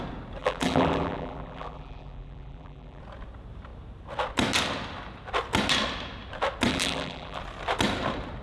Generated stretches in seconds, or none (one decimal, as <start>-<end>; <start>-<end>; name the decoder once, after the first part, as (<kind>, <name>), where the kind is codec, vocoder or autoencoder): 0.4-3.0 (vocoder, BigVGAN v2); 6.7-7.4